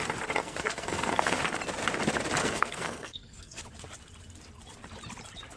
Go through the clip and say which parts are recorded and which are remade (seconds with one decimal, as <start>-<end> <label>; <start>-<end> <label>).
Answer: 0.0-0.4 recorded; 0.4-1.4 remade; 1.4-2.4 recorded; 2.4-3.6 remade; 3.6-5.6 recorded